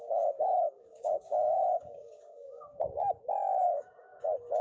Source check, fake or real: fake